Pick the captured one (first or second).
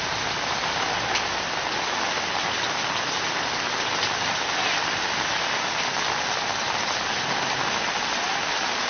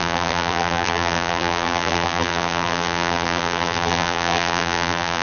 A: first